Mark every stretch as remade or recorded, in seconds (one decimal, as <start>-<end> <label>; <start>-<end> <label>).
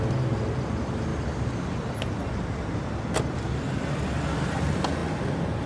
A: 0.0-5.7 recorded